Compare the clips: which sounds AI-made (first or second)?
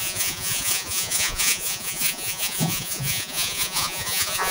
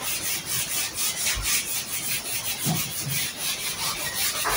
first